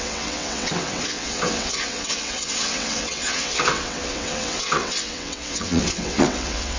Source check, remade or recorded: remade